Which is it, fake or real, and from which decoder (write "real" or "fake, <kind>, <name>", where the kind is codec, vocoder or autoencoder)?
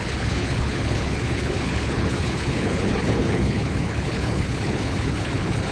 fake, codec, HILCodec